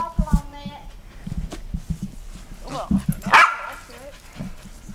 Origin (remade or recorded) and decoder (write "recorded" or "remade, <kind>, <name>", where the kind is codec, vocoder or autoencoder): recorded